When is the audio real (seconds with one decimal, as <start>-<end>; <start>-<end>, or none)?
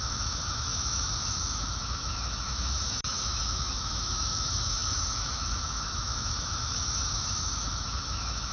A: none